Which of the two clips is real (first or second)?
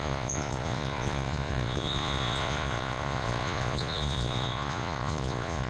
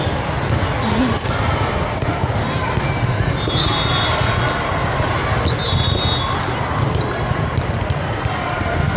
second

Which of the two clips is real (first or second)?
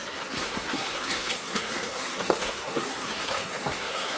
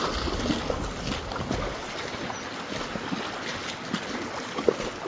second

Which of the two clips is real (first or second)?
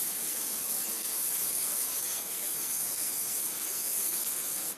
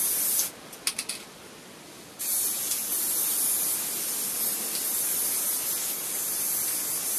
second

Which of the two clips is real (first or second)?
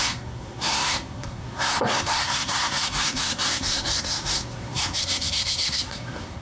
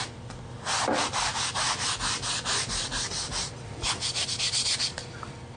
second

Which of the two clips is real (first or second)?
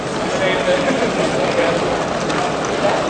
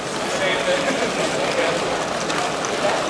first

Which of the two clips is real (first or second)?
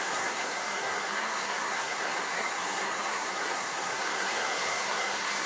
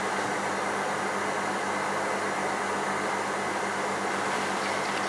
second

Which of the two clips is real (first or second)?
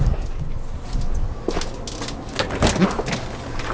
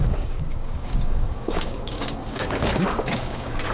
first